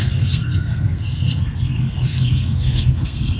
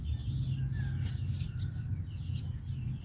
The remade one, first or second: first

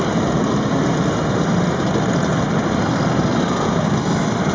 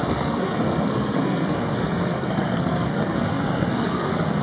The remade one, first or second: second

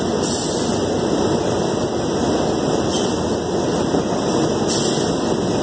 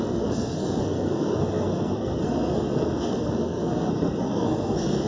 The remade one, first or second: second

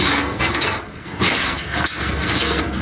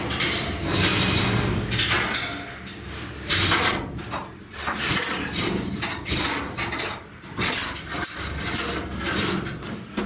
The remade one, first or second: first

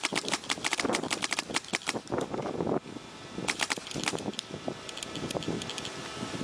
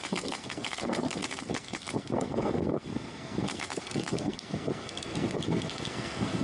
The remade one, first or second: second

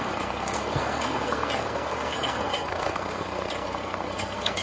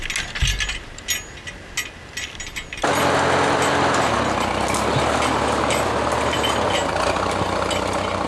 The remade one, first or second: first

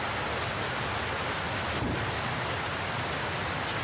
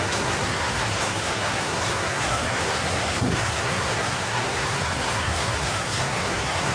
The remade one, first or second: second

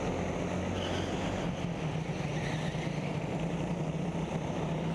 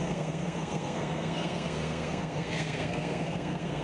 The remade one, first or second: second